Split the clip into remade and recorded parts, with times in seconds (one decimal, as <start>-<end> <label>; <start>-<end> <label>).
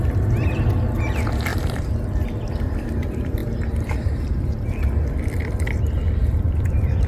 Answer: 0.0-1.5 recorded; 1.5-2.1 remade; 2.1-3.4 recorded; 3.4-4.8 remade; 4.8-7.1 recorded